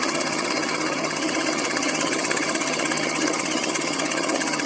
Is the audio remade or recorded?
remade